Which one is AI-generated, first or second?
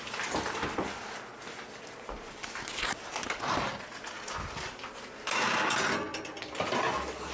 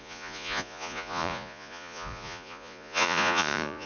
second